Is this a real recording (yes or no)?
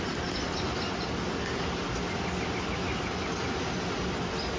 yes